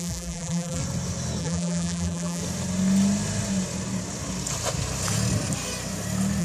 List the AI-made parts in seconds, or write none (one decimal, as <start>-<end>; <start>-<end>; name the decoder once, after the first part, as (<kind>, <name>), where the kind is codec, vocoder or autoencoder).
0.0-0.8 (vocoder, BigVGAN v2); 1.4-2.4